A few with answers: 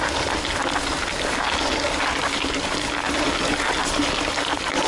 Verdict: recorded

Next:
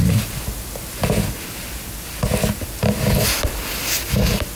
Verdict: recorded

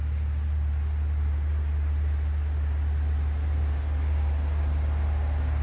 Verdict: recorded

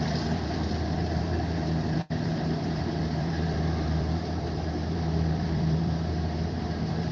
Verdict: remade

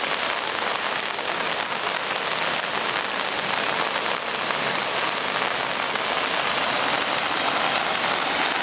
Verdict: recorded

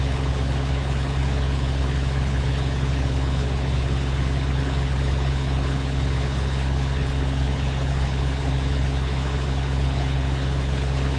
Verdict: remade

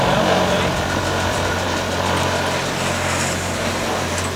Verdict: recorded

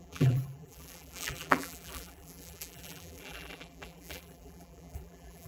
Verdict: remade